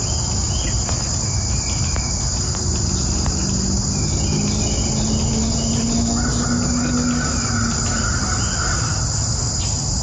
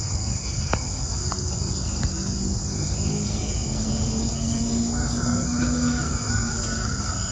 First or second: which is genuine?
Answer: first